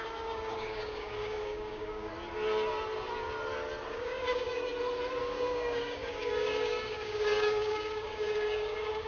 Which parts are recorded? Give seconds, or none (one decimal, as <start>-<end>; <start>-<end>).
2.1-3.9; 4.7-5.2